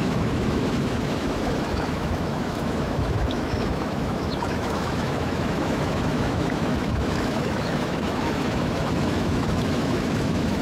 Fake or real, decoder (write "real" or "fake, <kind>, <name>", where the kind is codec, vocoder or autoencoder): fake, autoencoder, DAC-VAE